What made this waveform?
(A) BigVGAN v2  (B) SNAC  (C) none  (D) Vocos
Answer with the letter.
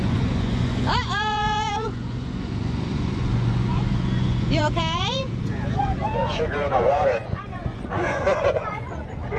D